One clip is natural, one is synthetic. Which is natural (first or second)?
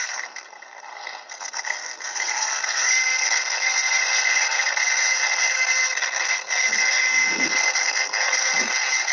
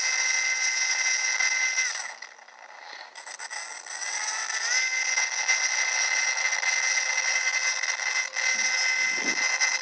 second